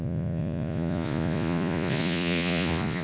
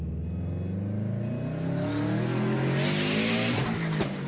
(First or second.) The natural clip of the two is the second